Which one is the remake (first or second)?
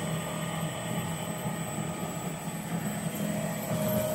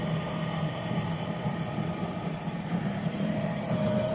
second